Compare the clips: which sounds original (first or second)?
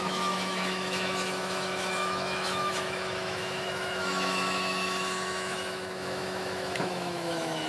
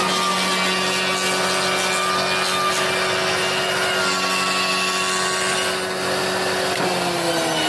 second